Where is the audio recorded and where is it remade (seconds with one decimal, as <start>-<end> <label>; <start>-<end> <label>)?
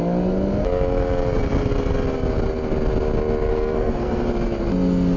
0.0-3.5 recorded; 3.5-4.2 remade; 4.2-5.2 recorded